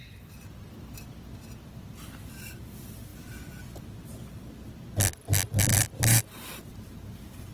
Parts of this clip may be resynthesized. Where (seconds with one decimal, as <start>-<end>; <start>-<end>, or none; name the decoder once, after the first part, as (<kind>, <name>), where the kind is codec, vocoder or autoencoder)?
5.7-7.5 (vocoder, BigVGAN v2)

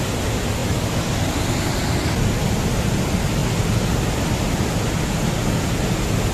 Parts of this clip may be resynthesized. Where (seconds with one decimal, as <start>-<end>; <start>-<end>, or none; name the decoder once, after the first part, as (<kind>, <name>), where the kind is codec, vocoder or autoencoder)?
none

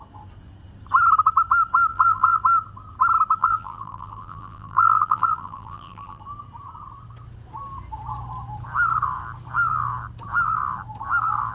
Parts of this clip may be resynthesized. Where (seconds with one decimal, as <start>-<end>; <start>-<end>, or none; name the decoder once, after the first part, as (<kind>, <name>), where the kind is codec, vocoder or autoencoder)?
1.9-2.4 (vocoder, BigVGAN v2); 3.4-6.2

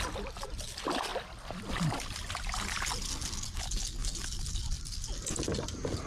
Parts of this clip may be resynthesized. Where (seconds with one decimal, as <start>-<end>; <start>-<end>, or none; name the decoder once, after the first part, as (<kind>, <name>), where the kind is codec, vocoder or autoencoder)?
1.1-2.9 (vocoder, BigVGAN v2); 4.0-4.8

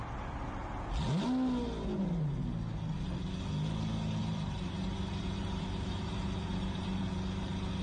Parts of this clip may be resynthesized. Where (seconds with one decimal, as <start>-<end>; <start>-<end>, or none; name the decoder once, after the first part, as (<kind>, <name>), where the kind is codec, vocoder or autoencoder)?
4.2-7.0 (vocoder, BigVGAN v2)